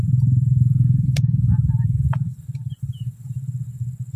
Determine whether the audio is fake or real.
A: fake